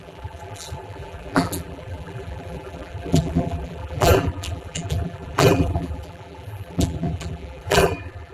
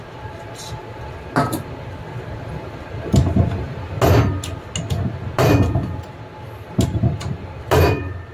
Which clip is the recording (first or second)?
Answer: second